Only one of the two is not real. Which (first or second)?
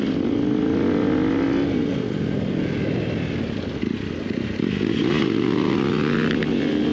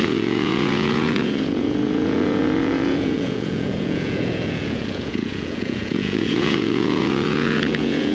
second